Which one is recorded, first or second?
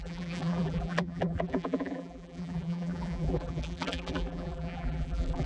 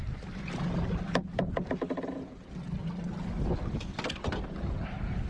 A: second